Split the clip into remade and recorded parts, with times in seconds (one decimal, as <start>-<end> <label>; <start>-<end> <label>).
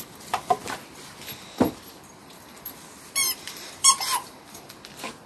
0.0-2.2 recorded; 2.2-4.7 remade; 4.7-5.3 recorded